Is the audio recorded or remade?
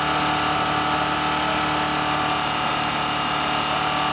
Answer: recorded